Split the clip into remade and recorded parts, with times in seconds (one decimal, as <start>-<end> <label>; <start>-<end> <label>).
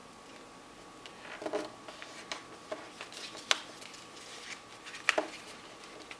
0.0-6.2 recorded